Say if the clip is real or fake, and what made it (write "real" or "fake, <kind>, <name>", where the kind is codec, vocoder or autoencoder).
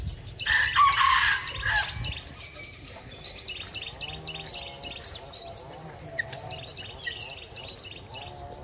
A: real